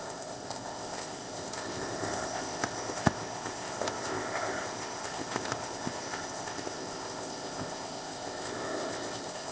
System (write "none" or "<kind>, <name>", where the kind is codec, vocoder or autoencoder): codec, ZipCodec